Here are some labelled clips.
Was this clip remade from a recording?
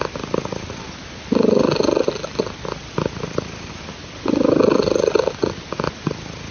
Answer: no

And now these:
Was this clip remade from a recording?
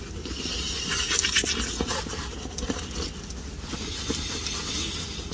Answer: no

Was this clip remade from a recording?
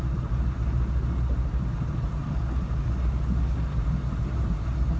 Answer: no